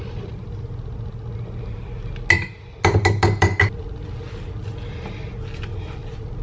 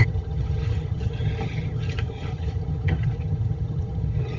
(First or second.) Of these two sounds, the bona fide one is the first